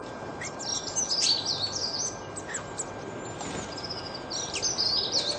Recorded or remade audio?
recorded